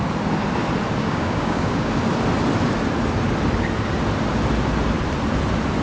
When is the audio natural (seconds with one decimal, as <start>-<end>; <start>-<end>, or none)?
0.0-1.0; 1.9-5.8